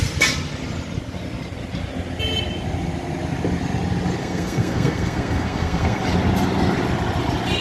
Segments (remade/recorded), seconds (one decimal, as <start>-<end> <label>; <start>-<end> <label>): 0.0-4.2 recorded; 4.2-6.0 remade; 6.0-7.6 recorded